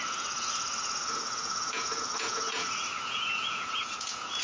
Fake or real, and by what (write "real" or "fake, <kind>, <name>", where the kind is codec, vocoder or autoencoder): fake, vocoder, Vocos